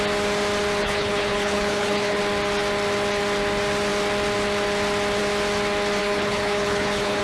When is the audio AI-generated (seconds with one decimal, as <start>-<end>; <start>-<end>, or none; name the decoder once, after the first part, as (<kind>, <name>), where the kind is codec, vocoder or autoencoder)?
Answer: 0.8-2.2 (codec, HILCodec); 6.0-7.2